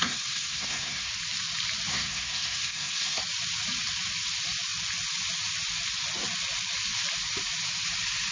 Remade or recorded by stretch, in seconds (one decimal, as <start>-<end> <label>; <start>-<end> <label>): 0.0-1.1 remade; 1.1-1.9 recorded; 1.9-3.2 remade; 3.2-8.3 recorded